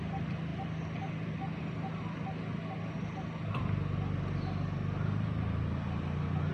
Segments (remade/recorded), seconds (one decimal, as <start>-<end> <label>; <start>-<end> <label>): 0.0-6.5 recorded